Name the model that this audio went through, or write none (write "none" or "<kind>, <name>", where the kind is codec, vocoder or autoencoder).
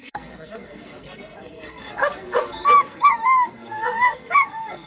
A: codec, SNAC